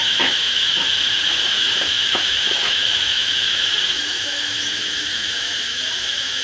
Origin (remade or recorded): remade